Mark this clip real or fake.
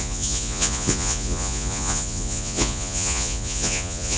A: fake